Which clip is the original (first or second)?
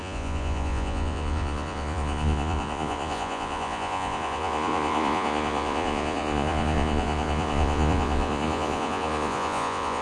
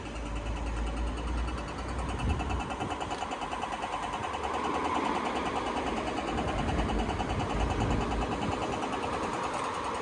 second